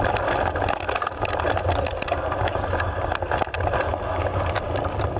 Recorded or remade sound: recorded